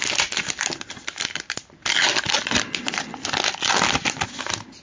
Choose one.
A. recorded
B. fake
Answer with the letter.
A